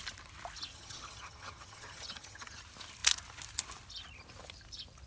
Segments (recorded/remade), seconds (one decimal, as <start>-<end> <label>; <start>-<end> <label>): 0.0-0.7 recorded; 0.7-2.6 remade; 2.6-5.1 recorded